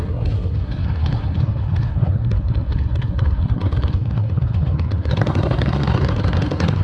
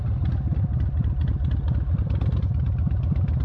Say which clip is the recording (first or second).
second